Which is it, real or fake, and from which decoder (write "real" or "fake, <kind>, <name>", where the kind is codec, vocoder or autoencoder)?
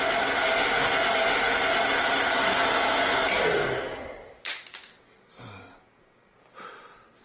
real